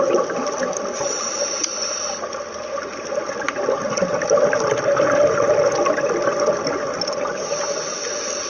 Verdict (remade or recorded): recorded